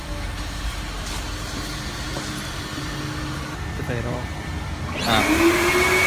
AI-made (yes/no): no